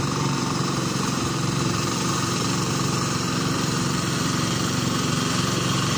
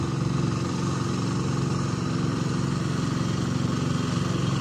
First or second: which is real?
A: second